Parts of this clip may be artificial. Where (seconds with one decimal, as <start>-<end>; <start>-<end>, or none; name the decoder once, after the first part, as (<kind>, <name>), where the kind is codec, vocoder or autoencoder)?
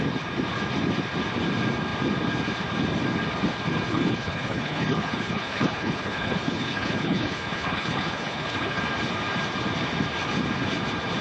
3.9-8.8 (codec, HILCodec)